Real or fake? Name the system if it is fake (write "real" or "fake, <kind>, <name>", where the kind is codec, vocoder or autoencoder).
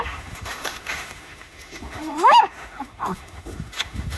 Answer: fake, autoencoder, DAC-VAE